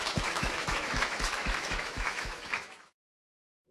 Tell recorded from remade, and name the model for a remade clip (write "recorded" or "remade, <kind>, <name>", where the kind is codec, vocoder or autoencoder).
remade, autoencoder, DAC-VAE